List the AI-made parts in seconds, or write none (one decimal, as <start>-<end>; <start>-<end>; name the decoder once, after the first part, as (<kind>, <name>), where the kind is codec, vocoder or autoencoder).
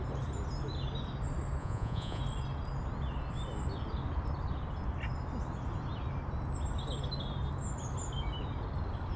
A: 1.6-2.2 (vocoder, Vocos)